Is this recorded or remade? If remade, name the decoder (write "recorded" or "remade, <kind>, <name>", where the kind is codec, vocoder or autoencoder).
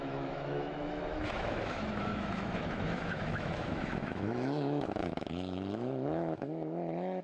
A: remade, autoencoder, DAC-VAE